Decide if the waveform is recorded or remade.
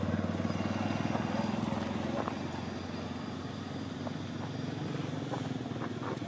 recorded